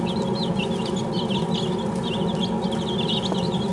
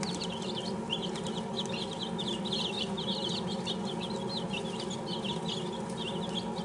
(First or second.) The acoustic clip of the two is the second